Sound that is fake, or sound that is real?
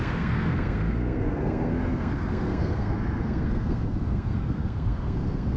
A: fake